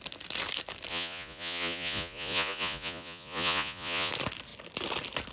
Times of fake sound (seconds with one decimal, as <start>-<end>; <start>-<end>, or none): 0.9-4.1